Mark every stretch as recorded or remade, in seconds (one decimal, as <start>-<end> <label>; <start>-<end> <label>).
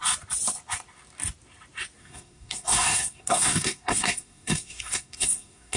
0.0-2.0 recorded; 2.0-5.8 remade